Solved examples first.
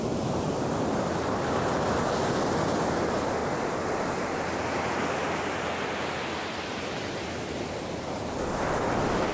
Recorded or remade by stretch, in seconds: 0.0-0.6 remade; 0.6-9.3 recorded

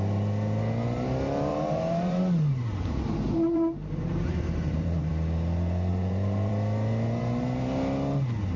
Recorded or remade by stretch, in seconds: 0.0-1.5 recorded; 1.5-5.1 remade; 5.1-5.9 recorded; 5.9-6.5 remade; 6.5-8.6 recorded

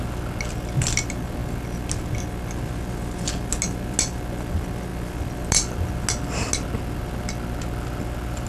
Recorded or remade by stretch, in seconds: 0.0-8.5 recorded

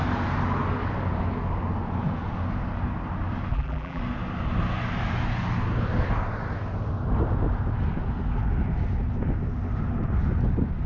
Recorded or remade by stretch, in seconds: 0.0-3.5 recorded; 3.5-4.0 remade; 4.0-10.9 recorded

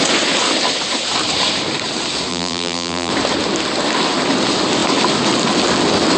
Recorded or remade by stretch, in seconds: 0.0-2.3 recorded; 2.3-3.1 remade; 3.1-6.2 recorded

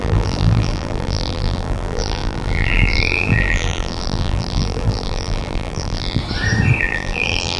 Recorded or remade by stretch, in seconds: 0.0-6.2 remade; 6.2-6.8 recorded; 6.8-7.6 remade